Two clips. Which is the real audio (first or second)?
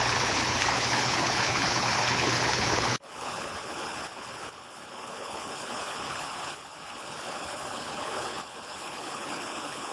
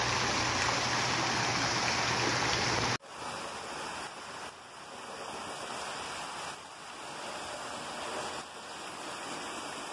second